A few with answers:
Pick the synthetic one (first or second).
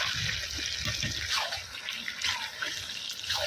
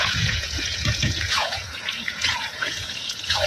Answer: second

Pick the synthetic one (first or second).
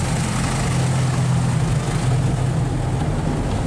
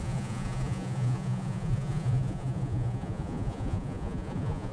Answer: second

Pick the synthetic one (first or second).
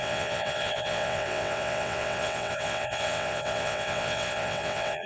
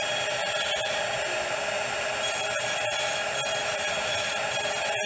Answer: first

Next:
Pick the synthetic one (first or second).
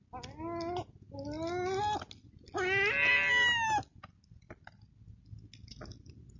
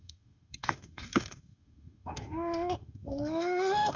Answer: second